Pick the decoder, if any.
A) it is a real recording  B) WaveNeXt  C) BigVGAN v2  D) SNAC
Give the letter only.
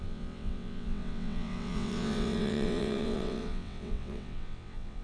B